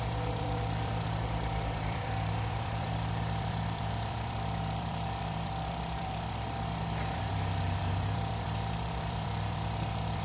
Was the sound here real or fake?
fake